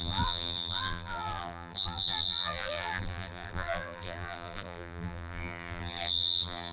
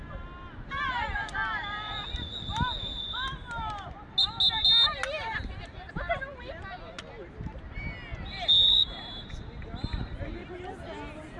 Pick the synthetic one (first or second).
first